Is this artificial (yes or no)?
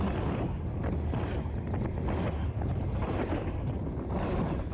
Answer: no